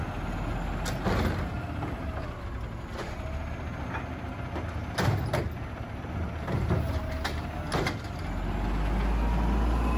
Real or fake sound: real